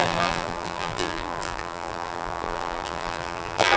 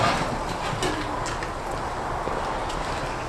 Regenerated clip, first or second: first